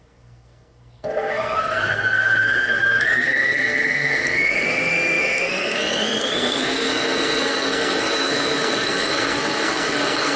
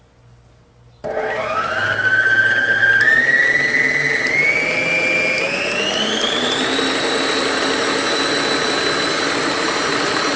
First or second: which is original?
second